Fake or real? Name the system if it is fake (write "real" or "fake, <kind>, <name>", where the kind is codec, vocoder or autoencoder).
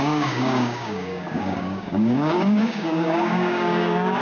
fake, codec, DAC